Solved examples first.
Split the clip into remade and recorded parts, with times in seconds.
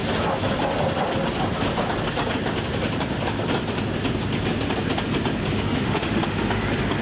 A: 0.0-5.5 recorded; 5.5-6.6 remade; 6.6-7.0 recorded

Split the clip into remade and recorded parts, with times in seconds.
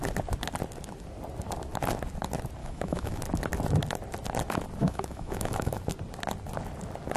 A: 0.0-2.6 recorded; 2.6-3.2 remade; 3.2-4.8 recorded; 4.8-5.8 remade; 5.8-7.2 recorded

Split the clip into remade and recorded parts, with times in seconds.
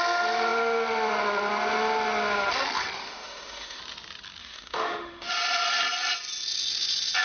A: 0.0-3.0 recorded; 3.0-3.8 remade; 3.8-4.4 recorded; 4.4-5.3 remade; 5.3-7.2 recorded